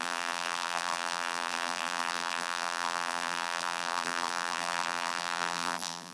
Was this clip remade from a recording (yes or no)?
yes